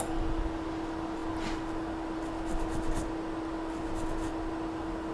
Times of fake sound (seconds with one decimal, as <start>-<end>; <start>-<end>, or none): none